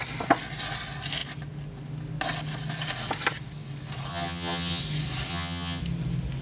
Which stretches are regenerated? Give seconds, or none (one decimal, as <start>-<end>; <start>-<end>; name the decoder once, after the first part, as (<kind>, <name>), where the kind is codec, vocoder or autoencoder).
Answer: 4.1-4.8 (vocoder, HiFi-GAN); 5.3-5.8